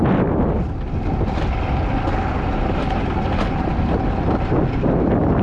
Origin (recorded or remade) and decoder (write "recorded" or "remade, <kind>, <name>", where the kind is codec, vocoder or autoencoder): recorded